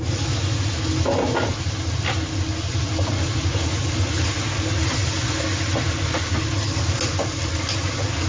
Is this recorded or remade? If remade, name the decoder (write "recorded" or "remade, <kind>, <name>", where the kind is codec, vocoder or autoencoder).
recorded